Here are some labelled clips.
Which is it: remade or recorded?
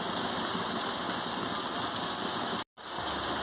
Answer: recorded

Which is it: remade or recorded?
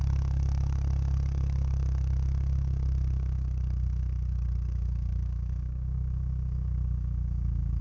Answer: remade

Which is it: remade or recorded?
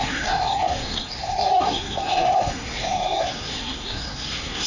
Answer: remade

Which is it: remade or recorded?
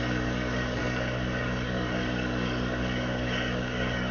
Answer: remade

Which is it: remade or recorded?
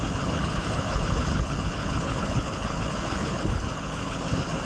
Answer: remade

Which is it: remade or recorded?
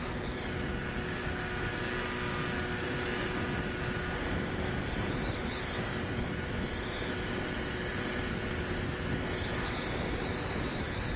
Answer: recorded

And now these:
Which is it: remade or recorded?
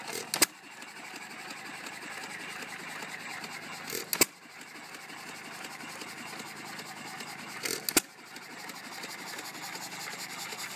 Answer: recorded